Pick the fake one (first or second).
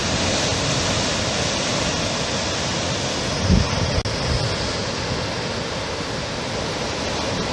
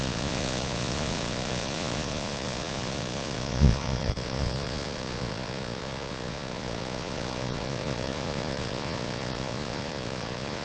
second